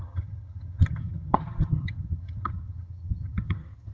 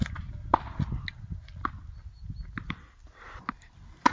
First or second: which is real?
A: second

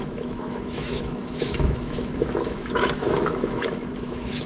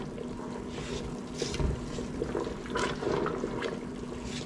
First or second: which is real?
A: second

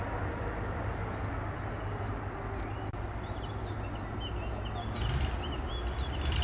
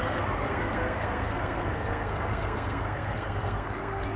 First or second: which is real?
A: first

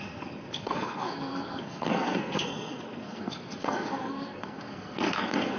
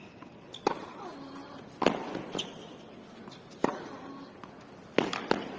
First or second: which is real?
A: second